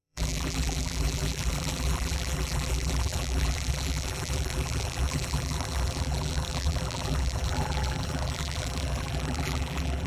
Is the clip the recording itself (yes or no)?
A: no